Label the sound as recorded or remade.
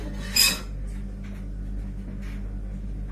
recorded